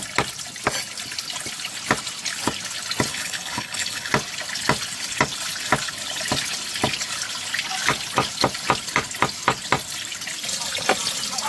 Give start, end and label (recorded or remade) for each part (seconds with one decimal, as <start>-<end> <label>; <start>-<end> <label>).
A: 0.0-3.1 recorded; 3.1-4.1 remade; 4.1-11.5 recorded